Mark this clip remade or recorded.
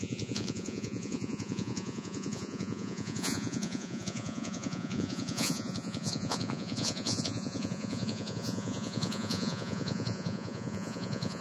remade